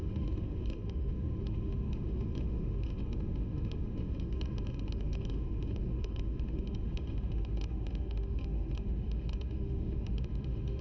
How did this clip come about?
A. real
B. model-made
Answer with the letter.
B